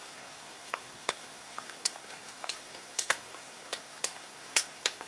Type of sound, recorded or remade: remade